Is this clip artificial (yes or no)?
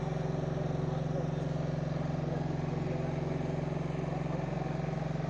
no